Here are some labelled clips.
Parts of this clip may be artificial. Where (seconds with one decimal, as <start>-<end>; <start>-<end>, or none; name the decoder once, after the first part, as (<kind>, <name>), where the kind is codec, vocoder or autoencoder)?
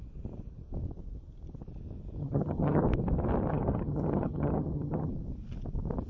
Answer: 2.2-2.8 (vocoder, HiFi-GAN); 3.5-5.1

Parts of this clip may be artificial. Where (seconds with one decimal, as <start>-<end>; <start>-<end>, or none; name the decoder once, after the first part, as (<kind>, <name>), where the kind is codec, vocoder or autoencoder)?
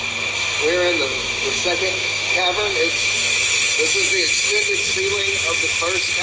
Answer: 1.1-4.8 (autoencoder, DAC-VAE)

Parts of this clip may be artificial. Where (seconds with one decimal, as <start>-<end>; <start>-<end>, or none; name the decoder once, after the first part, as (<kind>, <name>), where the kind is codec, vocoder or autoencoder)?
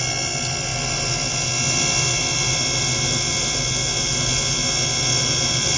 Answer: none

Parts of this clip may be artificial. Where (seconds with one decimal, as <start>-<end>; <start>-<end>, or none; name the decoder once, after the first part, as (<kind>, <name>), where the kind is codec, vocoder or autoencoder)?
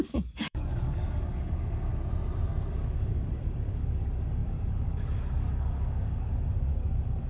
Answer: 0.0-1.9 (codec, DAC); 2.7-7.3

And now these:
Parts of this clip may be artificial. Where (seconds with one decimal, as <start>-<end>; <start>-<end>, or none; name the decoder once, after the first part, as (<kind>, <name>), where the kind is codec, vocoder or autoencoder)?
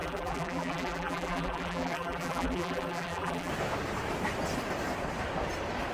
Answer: 0.0-3.5 (vocoder, BigVGAN v2)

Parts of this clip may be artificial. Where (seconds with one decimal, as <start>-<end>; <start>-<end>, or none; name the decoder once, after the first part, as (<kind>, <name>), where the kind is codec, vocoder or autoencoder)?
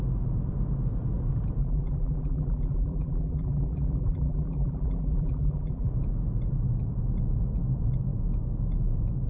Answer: 1.6-5.9 (vocoder, BigVGAN v2)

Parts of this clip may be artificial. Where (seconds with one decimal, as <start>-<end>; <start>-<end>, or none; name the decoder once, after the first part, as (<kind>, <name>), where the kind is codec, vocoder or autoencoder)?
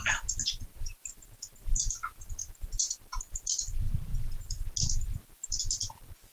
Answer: none